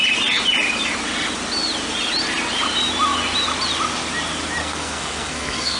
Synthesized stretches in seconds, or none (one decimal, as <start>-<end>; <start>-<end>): 4.6-5.8

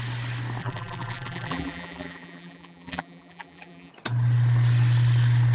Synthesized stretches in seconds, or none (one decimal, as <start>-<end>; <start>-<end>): 0.6-3.9